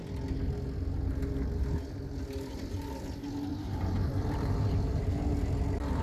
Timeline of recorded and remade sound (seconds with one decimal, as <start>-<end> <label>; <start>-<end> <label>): 0.0-3.5 recorded; 3.5-5.3 remade; 5.3-6.0 recorded